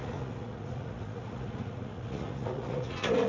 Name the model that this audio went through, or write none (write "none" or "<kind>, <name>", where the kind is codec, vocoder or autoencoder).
vocoder, Vocos